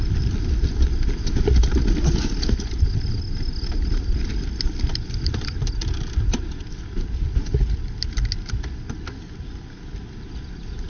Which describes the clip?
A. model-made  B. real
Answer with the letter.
B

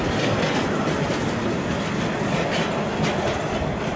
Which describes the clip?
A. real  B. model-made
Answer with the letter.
A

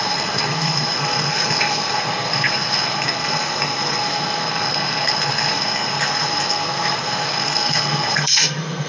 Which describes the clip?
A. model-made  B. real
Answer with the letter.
A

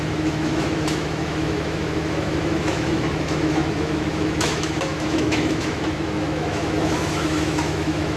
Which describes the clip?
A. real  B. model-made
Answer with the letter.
B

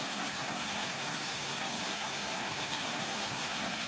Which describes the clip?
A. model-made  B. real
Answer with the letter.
A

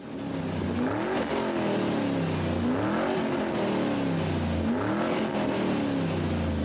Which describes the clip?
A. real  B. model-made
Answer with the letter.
A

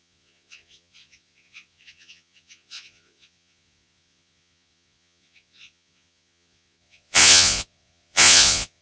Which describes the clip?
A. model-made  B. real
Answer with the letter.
A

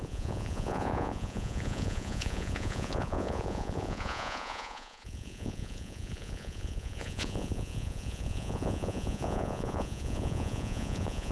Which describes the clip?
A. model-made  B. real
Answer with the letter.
A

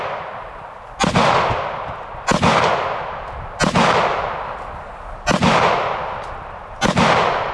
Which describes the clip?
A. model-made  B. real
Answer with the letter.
B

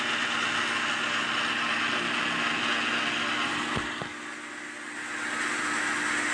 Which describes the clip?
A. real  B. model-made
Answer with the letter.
A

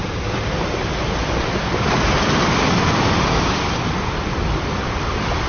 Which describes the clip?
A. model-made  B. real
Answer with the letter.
A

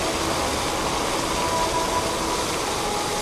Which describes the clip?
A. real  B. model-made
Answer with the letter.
A